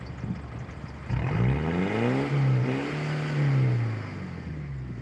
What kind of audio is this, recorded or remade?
recorded